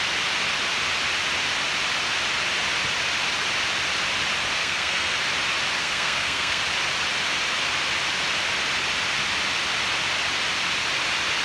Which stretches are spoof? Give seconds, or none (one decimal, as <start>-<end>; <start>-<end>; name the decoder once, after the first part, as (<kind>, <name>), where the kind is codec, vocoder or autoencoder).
4.6-5.2 (codec, SNAC); 5.8-6.6